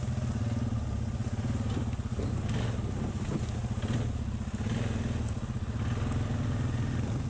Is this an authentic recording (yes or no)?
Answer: yes